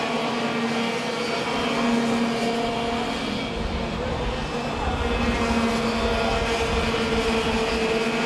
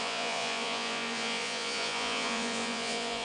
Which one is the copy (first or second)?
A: second